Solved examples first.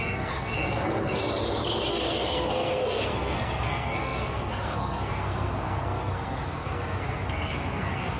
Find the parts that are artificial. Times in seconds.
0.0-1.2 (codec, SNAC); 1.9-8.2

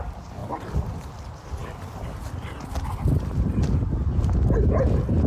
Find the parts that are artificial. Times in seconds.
0.4-1.1 (vocoder, BigVGAN v2)

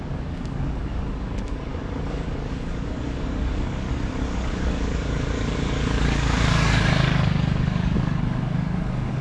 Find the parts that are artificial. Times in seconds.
0.0-9.2 (codec, DAC)

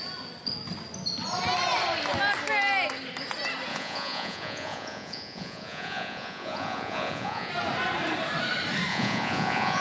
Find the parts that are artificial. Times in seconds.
3.7-7.5 (vocoder, Vocos); 8.9-9.8

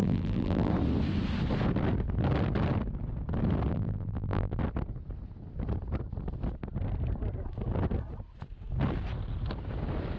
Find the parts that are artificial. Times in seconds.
0.0-0.7 (vocoder, BigVGAN v2); 3.7-4.6

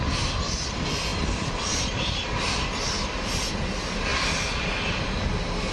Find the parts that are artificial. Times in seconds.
none

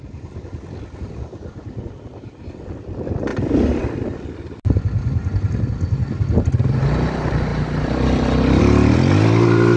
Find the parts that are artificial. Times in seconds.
none